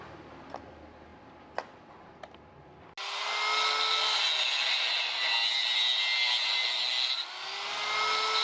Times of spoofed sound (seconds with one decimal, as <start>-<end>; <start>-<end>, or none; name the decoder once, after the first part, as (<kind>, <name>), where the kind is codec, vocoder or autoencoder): none